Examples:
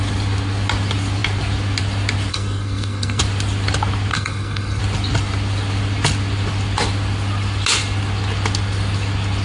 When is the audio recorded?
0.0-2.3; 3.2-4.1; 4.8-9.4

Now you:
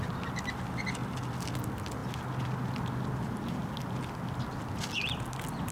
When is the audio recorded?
0.0-1.0; 1.5-5.7

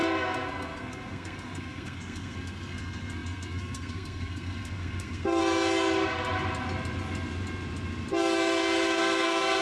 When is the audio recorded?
5.4-9.0

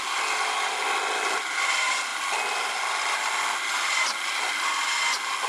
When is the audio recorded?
0.0-5.5